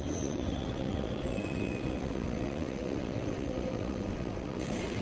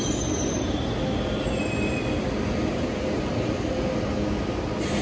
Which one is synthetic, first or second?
first